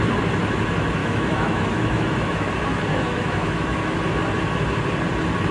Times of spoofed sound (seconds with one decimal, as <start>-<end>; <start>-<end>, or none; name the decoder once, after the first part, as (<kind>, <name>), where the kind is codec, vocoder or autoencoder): 1.0-2.5 (autoencoder, DAC-VAE); 2.9-4.1